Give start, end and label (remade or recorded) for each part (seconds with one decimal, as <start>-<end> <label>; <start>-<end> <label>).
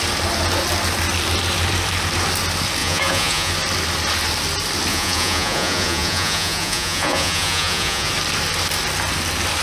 0.0-2.8 recorded; 2.8-3.5 remade; 3.5-4.9 recorded; 4.9-8.1 remade; 8.1-9.6 recorded